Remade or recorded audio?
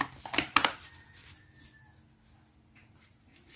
recorded